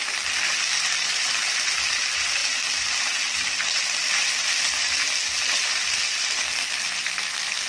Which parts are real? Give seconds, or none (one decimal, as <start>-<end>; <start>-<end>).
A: 0.0-7.7